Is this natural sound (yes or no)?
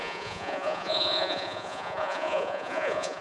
no